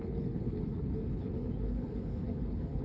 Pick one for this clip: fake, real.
fake